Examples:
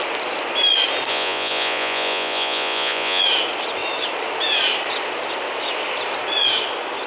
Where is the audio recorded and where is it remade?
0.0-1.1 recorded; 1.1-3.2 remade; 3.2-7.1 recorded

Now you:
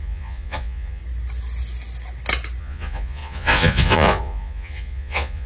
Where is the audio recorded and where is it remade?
0.0-1.0 remade; 1.0-2.6 recorded; 2.6-5.5 remade

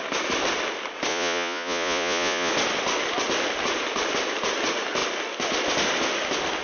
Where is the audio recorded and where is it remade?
0.0-1.1 recorded; 1.1-2.5 remade; 2.5-6.6 recorded

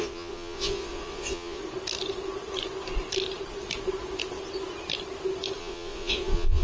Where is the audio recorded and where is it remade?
0.0-1.6 remade; 1.6-5.6 recorded; 5.6-6.6 remade

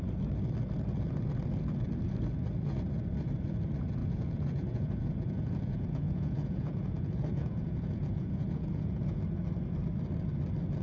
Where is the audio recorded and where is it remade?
0.0-4.0 recorded; 4.0-9.2 remade; 9.2-10.8 recorded